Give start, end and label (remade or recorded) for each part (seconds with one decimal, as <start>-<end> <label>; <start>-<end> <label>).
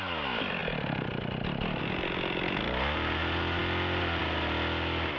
0.0-5.2 recorded